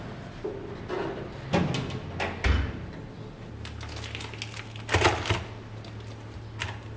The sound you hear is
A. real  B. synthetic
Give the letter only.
A